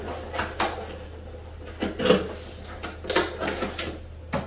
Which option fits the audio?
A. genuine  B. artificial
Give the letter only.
A